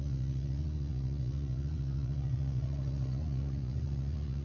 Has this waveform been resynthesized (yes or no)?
yes